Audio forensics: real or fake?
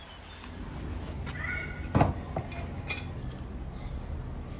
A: real